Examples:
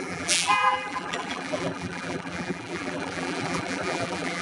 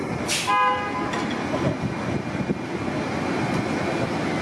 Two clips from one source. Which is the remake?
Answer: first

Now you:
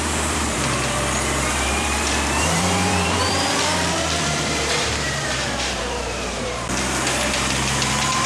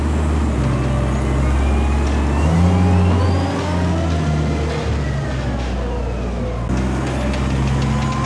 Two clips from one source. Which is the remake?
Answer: first